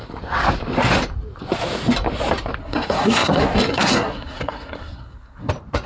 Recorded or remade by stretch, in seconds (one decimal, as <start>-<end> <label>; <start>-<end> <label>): 0.0-2.6 recorded; 2.6-5.5 remade; 5.5-5.9 recorded